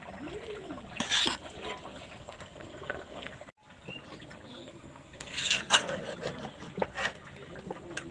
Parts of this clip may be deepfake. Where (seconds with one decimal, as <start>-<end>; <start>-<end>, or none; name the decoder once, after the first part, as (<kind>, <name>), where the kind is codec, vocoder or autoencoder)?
2.2-3.5 (codec, SNAC); 4.6-6.0